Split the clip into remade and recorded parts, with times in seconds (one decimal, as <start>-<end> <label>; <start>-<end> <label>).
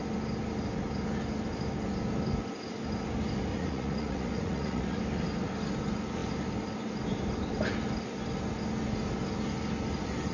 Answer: 0.0-3.5 recorded; 3.5-5.0 remade; 5.0-10.3 recorded